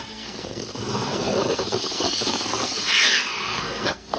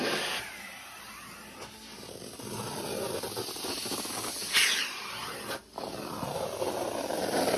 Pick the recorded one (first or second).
second